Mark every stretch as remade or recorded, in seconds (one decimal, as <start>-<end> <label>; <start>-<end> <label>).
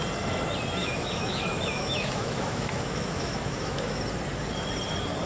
0.0-0.8 recorded; 0.8-4.0 remade; 4.0-5.3 recorded